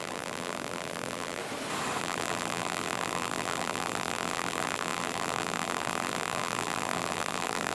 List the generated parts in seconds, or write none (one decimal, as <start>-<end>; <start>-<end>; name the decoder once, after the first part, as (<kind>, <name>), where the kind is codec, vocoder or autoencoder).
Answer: 0.0-1.4 (vocoder, BigVGAN v2); 2.0-7.7